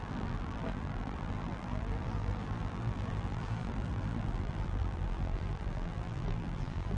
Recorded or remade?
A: remade